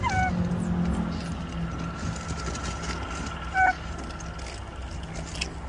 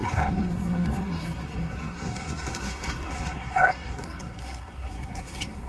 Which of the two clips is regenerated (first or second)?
second